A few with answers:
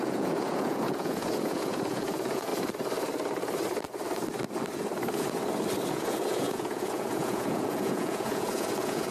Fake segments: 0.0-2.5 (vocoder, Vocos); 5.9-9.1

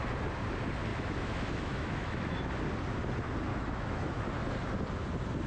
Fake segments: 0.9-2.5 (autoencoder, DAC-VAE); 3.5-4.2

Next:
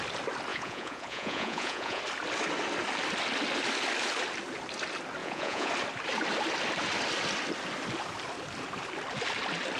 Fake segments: 0.5-2.0 (vocoder, Vocos); 5.2-5.7

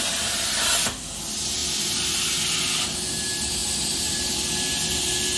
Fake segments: none

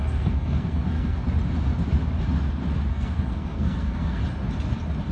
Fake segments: 0.0-1.2 (codec, SNAC); 2.9-4.2

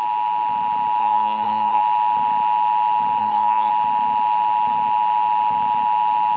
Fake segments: 1.0-1.8 (codec, SNAC); 3.2-3.7

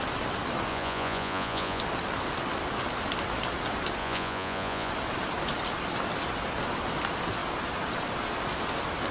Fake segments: 0.7-1.8 (vocoder, Vocos); 4.0-4.9

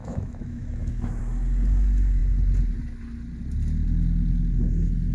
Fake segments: 0.0-1.2 (autoencoder, DAC-VAE)